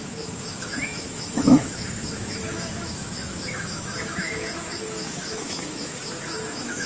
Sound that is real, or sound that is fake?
fake